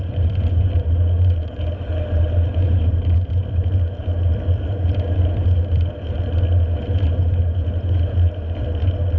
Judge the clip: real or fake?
fake